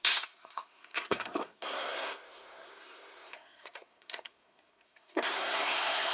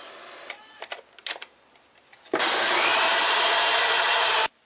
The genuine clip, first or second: second